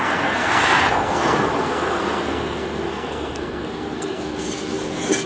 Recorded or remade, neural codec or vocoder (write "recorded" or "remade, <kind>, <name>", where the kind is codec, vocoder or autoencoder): remade, codec, SNAC